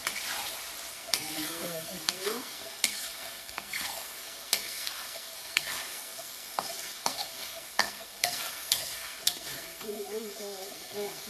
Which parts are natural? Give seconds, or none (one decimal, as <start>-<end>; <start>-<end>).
0.0-0.9